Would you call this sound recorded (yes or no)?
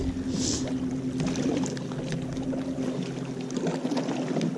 yes